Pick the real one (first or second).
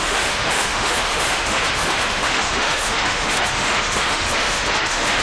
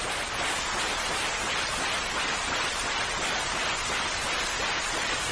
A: second